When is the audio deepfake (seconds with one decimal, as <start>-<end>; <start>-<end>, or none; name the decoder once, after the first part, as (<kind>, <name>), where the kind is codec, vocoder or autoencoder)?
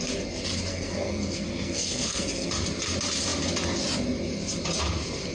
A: 0.7-2.5 (codec, SNAC)